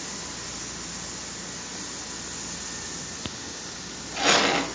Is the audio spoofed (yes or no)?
no